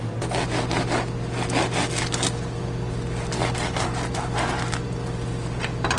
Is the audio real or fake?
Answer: real